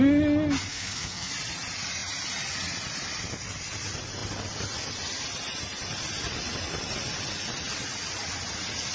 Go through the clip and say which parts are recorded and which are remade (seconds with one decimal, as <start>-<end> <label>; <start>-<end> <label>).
0.0-0.7 recorded; 0.7-1.3 remade; 1.3-8.9 recorded